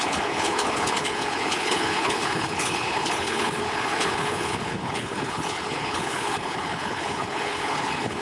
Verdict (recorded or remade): remade